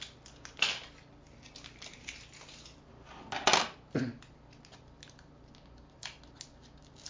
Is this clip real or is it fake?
real